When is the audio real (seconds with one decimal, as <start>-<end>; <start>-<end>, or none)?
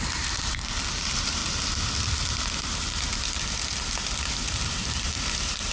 1.4-2.6; 3.1-4.2